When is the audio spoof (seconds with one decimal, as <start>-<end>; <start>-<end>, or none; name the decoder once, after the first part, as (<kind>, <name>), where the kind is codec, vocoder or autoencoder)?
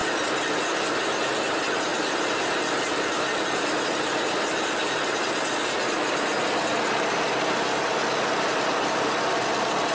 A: none